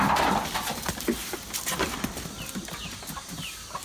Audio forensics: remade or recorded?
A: recorded